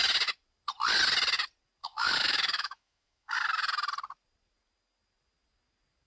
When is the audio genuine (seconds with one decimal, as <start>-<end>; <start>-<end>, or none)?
0.0-1.8; 3.3-6.1